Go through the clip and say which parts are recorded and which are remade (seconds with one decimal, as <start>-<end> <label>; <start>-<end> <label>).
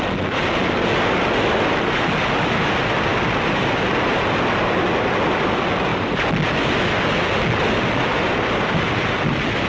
0.0-9.7 recorded